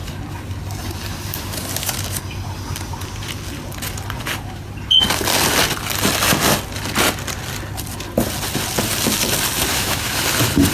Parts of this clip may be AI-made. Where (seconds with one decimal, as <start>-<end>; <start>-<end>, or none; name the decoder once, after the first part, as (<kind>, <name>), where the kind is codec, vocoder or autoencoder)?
9.7-10.2 (autoencoder, DAC-VAE)